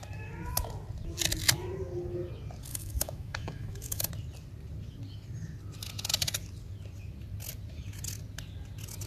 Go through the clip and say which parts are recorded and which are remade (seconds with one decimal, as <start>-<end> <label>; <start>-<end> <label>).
0.0-2.7 recorded; 2.7-4.1 remade; 4.1-9.1 recorded